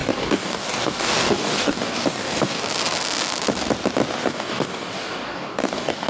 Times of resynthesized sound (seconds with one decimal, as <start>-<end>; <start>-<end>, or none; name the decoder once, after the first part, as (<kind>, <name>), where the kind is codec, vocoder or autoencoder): 0.0-2.6 (codec, DAC); 4.2-6.1

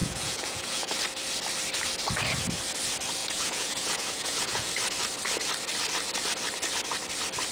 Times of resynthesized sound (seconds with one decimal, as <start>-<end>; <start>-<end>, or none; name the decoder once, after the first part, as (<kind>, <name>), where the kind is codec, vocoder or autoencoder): 0.0-0.9 (vocoder, Vocos); 3.2-4.7

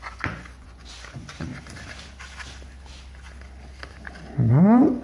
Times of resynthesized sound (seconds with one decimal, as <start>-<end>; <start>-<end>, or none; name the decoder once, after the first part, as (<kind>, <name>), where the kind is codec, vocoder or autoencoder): 0.0-1.5 (vocoder, Vocos); 4.5-5.0

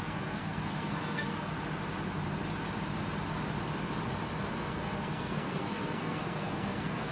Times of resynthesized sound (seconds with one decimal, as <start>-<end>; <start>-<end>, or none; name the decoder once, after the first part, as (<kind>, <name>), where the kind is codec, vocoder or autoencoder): 0.0-1.5 (codec, SNAC); 4.5-7.1

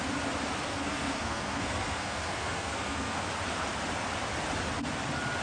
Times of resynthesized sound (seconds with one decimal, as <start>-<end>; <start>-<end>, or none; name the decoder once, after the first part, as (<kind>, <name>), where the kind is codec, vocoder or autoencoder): 0.7-3.2 (codec, SNAC)

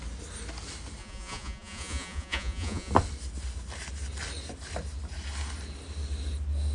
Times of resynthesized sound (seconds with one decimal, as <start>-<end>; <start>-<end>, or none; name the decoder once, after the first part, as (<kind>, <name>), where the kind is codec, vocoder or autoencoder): 1.0-2.9 (vocoder, Vocos)

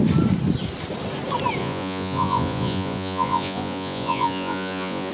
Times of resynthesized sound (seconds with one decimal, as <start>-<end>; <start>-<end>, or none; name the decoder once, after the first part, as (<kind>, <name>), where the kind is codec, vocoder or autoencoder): 1.6-5.1 (vocoder, Vocos)